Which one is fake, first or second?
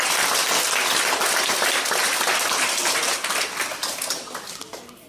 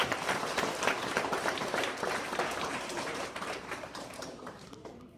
second